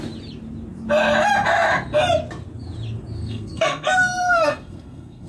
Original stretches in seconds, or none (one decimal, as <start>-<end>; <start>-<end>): 0.0-3.2